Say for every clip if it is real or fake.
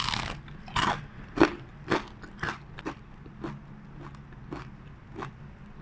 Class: real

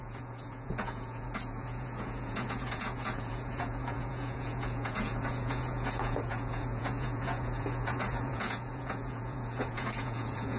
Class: fake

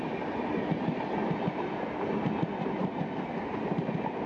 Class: real